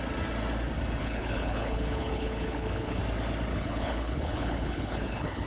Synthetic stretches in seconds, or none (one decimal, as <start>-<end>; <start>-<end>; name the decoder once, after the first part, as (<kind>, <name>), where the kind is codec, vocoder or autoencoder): 1.0-3.0 (codec, HILCodec); 3.5-5.5